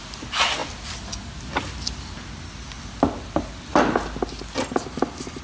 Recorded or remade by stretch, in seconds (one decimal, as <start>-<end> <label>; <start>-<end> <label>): 0.0-5.4 recorded